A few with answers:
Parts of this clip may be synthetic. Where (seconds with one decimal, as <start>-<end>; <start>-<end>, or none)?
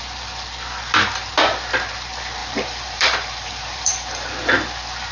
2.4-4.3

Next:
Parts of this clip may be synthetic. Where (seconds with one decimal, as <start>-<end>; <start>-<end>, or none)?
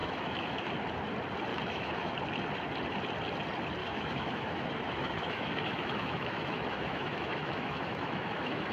0.0-0.7; 1.5-2.1; 3.8-8.7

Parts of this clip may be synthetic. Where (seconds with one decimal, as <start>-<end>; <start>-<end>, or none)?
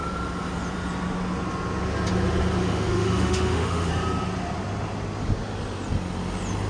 2.6-3.9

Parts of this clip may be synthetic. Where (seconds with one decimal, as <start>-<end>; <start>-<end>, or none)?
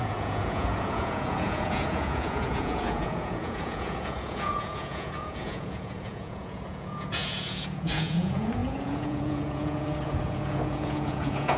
0.0-11.6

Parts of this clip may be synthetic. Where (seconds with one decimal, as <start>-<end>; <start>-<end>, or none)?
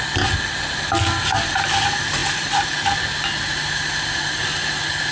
2.2-3.0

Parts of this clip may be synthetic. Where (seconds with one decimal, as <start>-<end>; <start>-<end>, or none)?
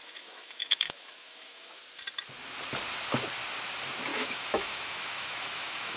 0.0-1.8; 4.1-6.0